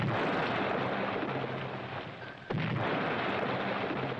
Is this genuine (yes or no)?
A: yes